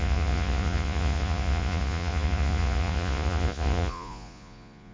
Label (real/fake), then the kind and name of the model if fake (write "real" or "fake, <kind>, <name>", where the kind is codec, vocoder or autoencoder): fake, vocoder, Vocos